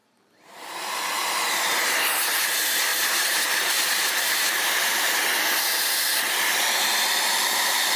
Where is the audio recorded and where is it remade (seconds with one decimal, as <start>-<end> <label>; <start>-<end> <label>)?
0.0-1.0 remade; 1.0-2.9 recorded; 2.9-5.2 remade; 5.2-8.0 recorded